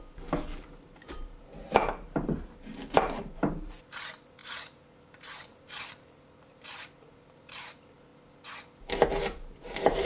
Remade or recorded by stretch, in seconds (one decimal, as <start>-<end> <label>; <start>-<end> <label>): 0.0-8.1 remade; 8.1-9.7 recorded; 9.7-10.1 remade